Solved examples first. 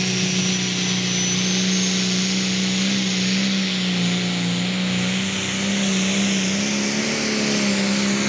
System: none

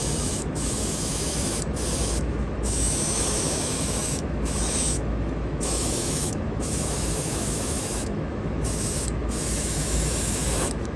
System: autoencoder, DAC-VAE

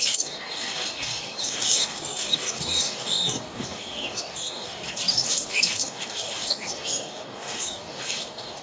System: codec, DAC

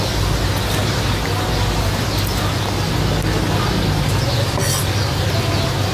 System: none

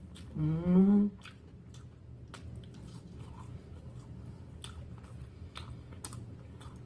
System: none